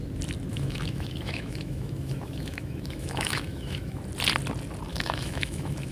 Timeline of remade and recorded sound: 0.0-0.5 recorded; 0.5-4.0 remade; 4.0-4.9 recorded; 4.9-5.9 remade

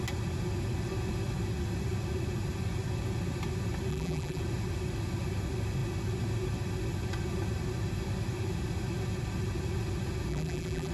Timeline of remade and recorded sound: 0.0-3.9 recorded; 3.9-4.4 remade; 4.4-10.3 recorded; 10.3-10.9 remade

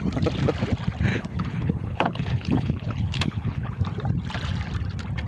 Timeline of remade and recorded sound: 0.0-1.1 recorded; 1.1-3.8 remade; 3.8-5.3 recorded

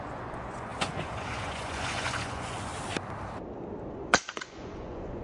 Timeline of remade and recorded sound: 0.0-2.7 remade; 2.7-3.9 recorded; 3.9-5.2 remade

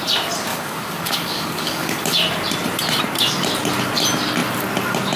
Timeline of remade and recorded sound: 0.0-0.5 recorded; 0.5-2.0 remade; 2.0-5.2 recorded

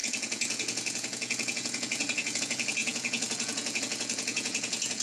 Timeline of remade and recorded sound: 0.0-5.0 remade

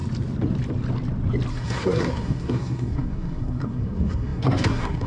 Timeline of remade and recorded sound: 0.0-1.5 recorded; 1.5-5.1 remade

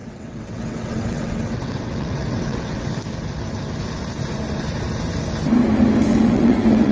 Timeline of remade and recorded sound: 0.0-2.9 remade; 2.9-6.1 recorded; 6.1-6.9 remade